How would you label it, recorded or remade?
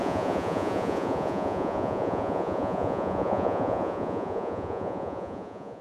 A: remade